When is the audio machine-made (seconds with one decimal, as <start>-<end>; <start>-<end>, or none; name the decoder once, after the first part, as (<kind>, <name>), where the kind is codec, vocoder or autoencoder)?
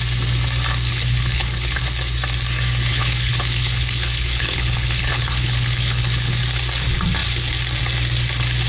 0.9-1.8 (codec, HILCodec); 2.9-6.4